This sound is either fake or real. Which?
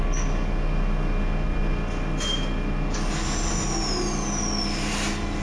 real